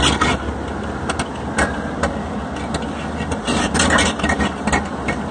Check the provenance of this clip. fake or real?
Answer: real